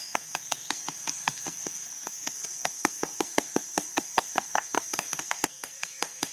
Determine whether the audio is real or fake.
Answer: fake